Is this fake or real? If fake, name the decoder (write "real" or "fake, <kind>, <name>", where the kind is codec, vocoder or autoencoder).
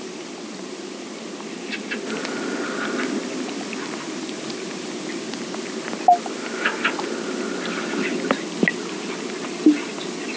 real